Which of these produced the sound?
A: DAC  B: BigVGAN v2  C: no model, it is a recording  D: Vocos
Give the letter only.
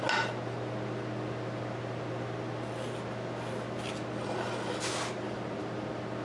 C